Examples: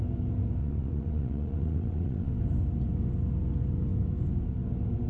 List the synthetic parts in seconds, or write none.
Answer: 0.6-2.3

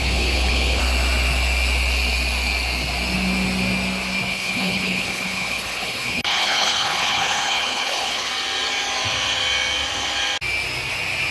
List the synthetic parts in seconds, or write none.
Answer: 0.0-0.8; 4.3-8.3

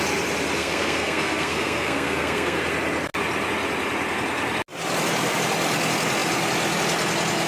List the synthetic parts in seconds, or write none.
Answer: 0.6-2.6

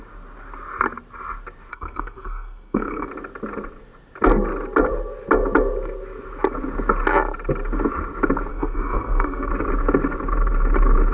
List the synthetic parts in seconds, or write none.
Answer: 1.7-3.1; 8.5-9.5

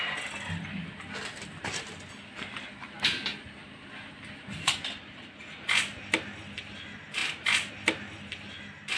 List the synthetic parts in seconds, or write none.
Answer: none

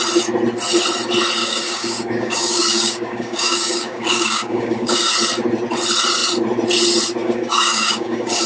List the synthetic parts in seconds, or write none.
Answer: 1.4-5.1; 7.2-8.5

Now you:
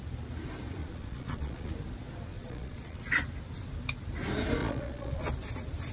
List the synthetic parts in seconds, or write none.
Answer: 0.8-1.7; 2.3-3.0; 4.6-5.3